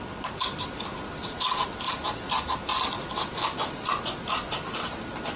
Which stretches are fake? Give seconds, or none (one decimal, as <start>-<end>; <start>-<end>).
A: none